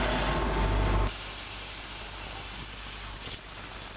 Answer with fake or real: real